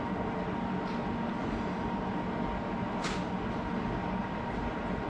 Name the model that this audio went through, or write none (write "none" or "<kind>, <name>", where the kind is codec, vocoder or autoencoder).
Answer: none